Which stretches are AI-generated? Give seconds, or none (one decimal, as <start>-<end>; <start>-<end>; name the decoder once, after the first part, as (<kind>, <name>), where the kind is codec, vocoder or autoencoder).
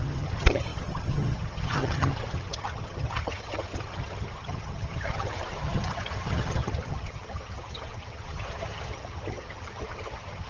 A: 0.0-10.5 (vocoder, HiFi-GAN)